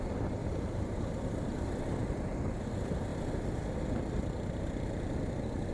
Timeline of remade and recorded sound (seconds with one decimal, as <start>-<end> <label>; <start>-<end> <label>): 0.0-0.4 recorded; 0.4-1.0 remade; 1.0-5.7 recorded